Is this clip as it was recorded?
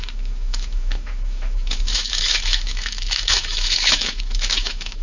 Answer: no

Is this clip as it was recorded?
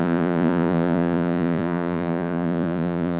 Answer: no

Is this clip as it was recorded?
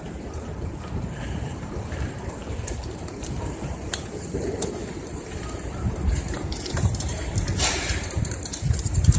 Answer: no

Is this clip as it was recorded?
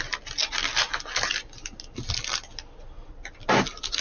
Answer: yes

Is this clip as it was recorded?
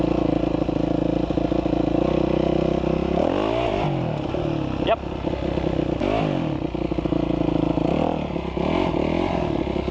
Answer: yes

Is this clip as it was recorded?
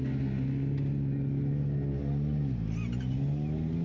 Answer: yes